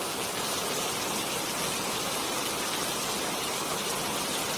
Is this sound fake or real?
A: real